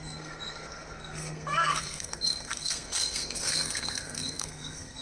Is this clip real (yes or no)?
no